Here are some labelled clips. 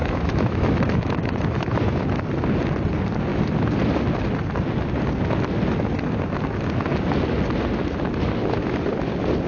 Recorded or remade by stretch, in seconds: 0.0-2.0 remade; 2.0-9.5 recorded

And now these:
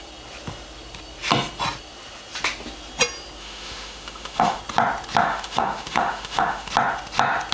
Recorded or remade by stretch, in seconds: 0.0-3.4 recorded; 3.4-4.6 remade; 4.6-5.2 recorded; 5.2-6.7 remade; 6.7-7.5 recorded